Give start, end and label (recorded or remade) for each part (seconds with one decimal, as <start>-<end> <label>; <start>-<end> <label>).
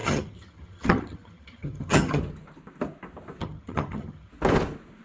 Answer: 0.0-2.2 remade; 2.2-3.4 recorded; 3.4-4.3 remade; 4.3-5.0 recorded